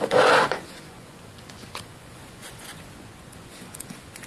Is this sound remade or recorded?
remade